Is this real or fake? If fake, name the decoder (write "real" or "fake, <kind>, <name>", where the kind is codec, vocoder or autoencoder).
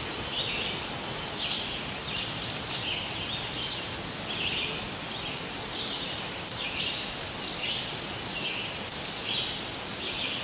real